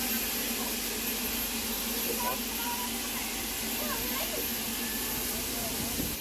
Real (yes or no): yes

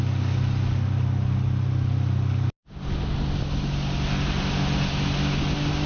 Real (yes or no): yes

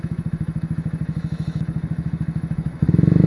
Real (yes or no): no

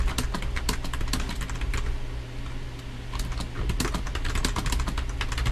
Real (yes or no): yes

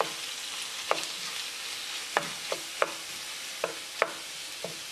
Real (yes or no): yes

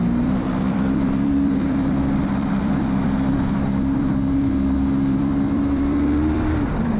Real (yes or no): no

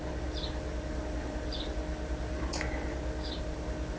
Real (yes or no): yes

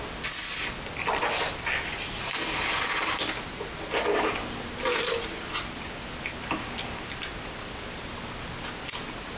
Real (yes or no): yes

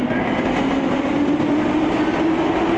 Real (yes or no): yes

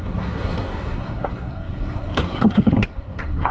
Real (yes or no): no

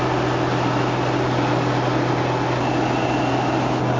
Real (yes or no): yes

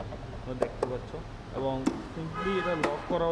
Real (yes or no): yes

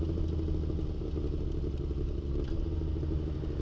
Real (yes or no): yes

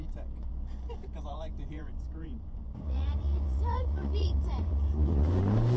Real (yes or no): no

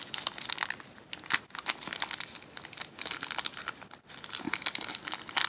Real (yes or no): yes